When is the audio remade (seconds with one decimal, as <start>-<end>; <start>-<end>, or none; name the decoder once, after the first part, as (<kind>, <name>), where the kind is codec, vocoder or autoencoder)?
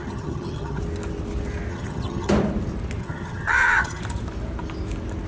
0.0-0.8 (vocoder, HiFi-GAN); 1.7-2.3; 3.0-4.0